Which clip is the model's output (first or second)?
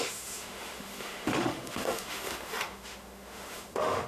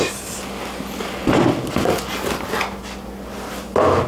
first